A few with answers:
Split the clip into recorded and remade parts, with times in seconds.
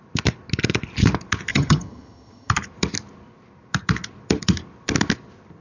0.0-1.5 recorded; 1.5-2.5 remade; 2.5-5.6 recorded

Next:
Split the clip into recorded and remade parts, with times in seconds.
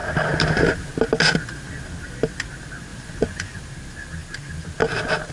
0.0-2.9 recorded; 2.9-3.6 remade; 3.6-5.3 recorded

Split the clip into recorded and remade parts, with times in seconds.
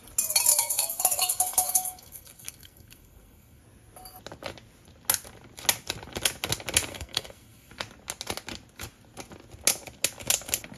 0.0-0.5 recorded; 0.5-3.6 remade; 3.6-6.9 recorded; 6.9-7.7 remade; 7.7-10.8 recorded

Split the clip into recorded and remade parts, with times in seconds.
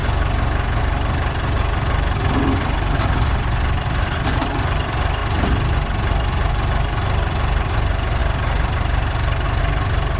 0.0-0.8 recorded; 0.8-10.2 remade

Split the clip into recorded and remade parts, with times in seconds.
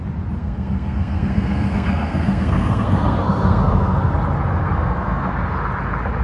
0.0-0.4 recorded; 0.4-4.1 remade; 4.1-4.6 recorded; 4.6-5.3 remade; 5.3-6.2 recorded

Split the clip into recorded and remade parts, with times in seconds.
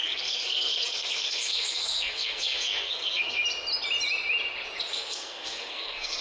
0.0-3.4 remade; 3.4-4.9 recorded; 4.9-6.2 remade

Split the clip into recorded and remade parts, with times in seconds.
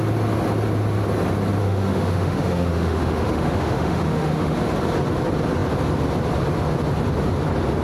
0.0-1.6 recorded; 1.6-4.6 remade; 4.6-7.8 recorded